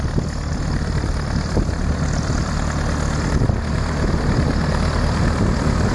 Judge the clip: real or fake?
real